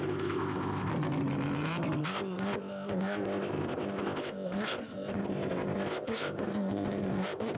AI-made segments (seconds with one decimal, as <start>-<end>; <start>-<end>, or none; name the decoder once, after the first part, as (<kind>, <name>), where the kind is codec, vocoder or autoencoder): 0.0-0.9 (codec, ZipCodec); 2.0-7.6